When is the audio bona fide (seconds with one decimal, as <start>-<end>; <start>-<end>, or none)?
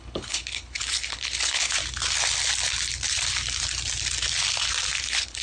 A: 1.8-5.0